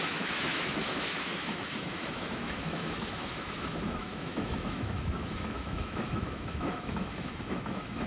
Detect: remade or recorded remade